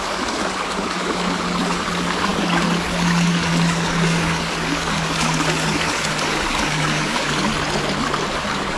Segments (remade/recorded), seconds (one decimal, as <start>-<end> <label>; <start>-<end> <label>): 0.0-7.5 remade; 7.5-8.4 recorded; 8.4-8.8 remade